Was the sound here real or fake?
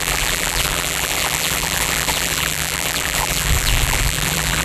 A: fake